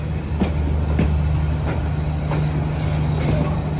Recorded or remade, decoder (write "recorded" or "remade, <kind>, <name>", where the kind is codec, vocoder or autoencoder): recorded